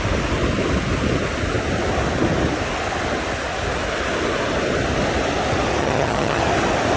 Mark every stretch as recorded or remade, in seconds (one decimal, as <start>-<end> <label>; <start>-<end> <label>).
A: 0.0-5.8 recorded; 5.8-6.4 remade; 6.4-7.0 recorded